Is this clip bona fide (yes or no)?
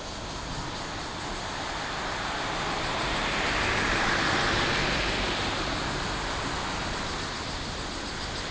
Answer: yes